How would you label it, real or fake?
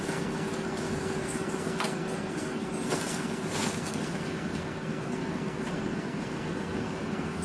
fake